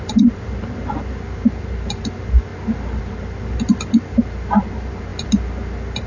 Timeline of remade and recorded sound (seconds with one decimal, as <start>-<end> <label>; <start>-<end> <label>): 0.0-6.1 recorded